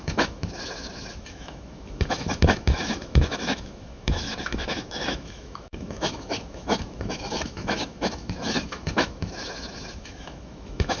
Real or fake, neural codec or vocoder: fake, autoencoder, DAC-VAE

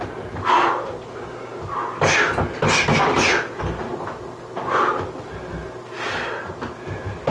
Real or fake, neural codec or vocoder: real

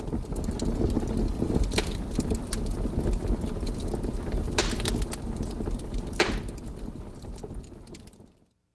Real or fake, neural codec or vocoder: real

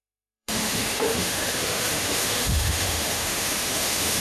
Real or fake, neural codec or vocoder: fake, autoencoder, DAC-VAE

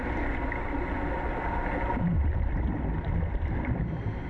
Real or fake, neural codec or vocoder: real